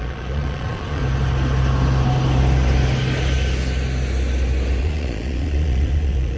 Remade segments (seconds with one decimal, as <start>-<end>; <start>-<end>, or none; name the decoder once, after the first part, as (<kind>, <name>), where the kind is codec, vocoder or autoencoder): 0.0-1.0 (vocoder, Vocos); 4.8-6.4